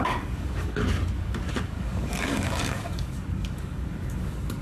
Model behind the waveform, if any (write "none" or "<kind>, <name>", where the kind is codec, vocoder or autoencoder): codec, DAC